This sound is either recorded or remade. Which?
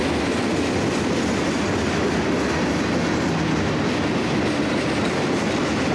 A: recorded